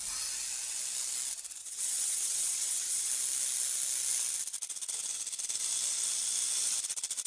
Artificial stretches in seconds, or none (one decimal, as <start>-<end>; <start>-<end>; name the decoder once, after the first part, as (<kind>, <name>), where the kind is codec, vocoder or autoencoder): 1.6-3.1 (vocoder, WaveNeXt)